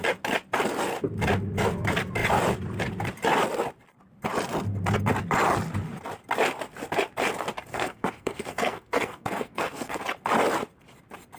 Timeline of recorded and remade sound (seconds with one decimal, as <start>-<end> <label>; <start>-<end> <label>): 0.0-7.7 recorded; 7.7-10.0 remade; 10.0-11.4 recorded